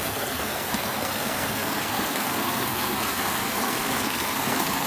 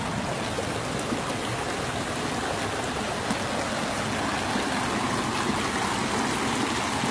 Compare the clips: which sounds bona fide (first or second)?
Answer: second